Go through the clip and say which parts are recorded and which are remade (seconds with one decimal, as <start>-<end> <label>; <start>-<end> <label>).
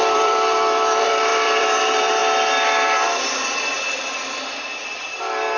0.0-2.2 remade; 2.2-5.6 recorded